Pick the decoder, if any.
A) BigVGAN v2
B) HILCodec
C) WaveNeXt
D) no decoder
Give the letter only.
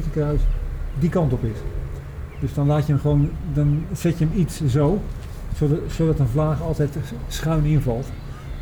D